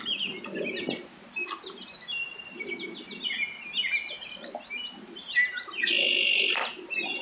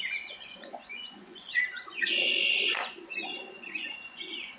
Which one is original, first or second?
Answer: first